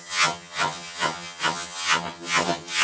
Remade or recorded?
remade